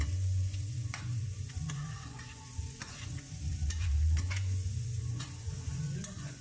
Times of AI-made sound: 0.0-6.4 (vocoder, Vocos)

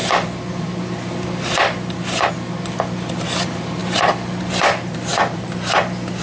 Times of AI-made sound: 5.1-5.8 (vocoder, BigVGAN v2)

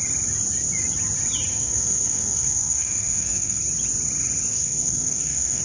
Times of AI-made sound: 1.5-3.6 (codec, SNAC); 4.5-5.6

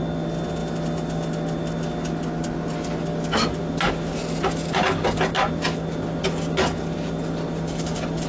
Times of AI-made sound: none

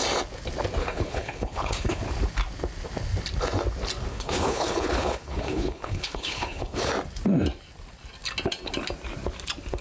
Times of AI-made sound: 0.8-2.0 (codec, HILCodec); 4.1-6.9

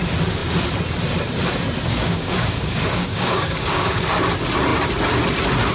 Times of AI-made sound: 1.9-4.0 (codec, DAC)